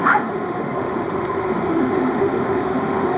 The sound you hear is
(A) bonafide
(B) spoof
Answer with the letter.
B